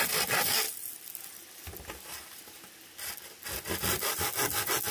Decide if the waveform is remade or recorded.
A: recorded